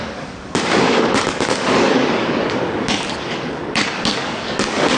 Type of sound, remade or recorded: remade